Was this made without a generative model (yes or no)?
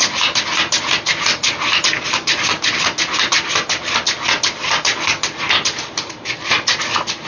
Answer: yes